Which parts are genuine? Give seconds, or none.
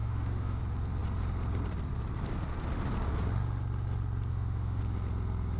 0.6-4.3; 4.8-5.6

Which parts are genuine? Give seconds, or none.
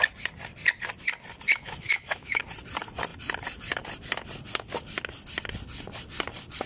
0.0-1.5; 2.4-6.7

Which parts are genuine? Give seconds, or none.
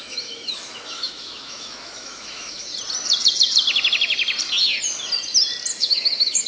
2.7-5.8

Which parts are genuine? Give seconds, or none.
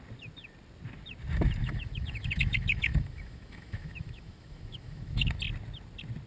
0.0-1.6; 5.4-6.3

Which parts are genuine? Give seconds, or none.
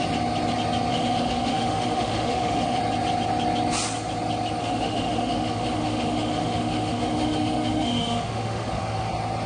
0.0-0.9; 2.8-4.6; 9.1-9.5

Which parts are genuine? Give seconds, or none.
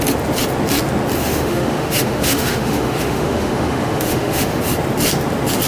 0.0-1.2; 4.6-5.7